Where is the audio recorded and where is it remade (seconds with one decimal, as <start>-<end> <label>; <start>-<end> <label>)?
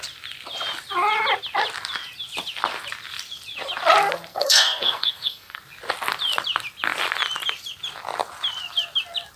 0.0-4.3 recorded; 4.3-5.6 remade; 5.6-9.4 recorded